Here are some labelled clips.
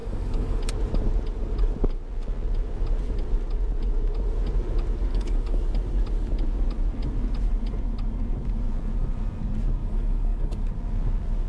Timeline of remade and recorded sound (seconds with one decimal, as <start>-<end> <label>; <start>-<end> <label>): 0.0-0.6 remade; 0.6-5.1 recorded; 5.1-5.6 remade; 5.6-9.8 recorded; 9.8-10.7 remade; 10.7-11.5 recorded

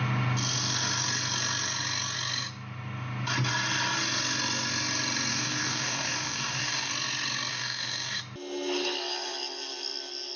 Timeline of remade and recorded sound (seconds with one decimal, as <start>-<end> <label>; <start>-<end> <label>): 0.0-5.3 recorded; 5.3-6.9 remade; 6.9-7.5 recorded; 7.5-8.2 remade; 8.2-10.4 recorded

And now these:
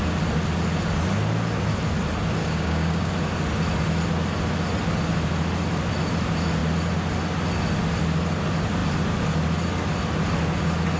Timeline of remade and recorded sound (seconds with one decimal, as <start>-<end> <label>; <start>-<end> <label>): 0.0-2.4 recorded; 2.4-3.1 remade; 3.1-11.0 recorded

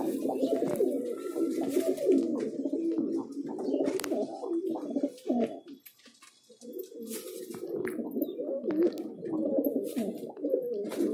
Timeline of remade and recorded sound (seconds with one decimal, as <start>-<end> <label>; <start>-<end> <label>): 0.0-11.1 recorded

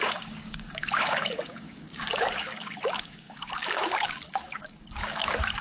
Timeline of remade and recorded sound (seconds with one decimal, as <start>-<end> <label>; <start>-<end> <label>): 0.0-5.6 remade